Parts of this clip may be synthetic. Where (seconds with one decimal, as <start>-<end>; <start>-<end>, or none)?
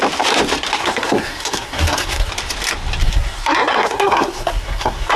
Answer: 0.8-2.3; 3.0-5.2